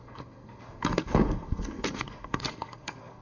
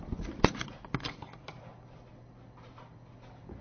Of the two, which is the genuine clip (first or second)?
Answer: second